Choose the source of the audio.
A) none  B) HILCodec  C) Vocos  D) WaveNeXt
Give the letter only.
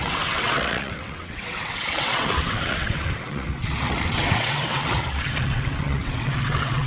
D